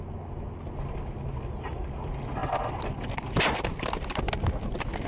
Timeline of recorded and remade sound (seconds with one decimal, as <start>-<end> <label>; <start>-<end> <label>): 0.0-2.4 recorded; 2.4-4.1 remade; 4.1-5.1 recorded